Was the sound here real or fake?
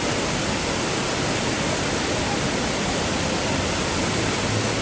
real